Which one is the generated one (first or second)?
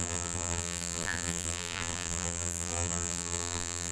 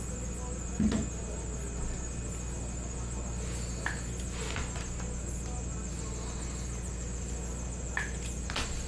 first